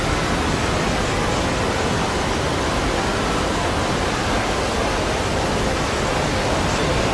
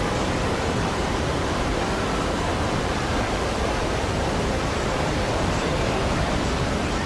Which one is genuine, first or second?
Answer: first